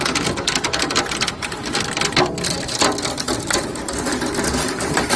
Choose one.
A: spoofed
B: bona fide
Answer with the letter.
B